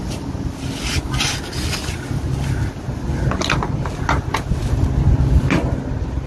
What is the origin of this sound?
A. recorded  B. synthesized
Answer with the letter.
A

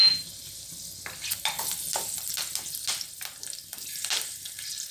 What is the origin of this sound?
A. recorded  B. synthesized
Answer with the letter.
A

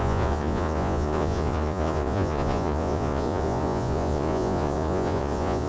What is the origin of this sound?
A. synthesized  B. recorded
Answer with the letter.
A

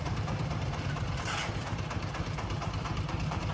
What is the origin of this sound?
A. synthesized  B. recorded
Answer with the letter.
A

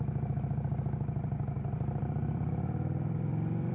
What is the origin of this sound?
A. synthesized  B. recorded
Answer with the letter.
A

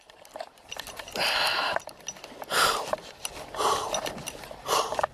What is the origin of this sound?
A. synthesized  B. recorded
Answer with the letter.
B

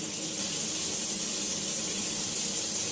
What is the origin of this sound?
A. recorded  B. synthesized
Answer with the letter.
A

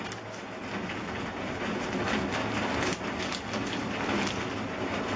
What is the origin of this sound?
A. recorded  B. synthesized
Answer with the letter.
A